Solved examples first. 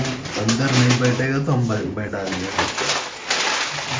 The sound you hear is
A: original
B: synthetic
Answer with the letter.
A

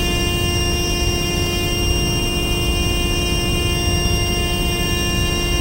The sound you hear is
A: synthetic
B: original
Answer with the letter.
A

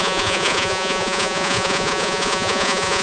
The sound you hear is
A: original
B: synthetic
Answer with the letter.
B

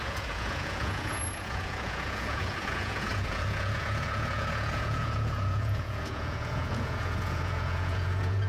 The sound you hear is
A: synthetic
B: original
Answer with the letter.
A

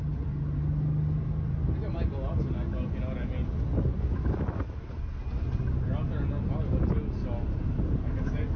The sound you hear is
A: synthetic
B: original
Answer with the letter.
B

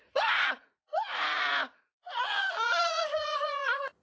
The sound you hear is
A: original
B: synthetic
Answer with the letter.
B